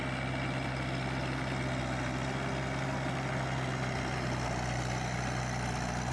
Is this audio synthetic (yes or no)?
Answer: no